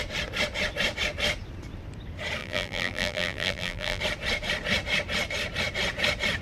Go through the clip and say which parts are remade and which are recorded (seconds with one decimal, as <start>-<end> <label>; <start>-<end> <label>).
0.0-2.4 recorded; 2.4-4.0 remade; 4.0-6.4 recorded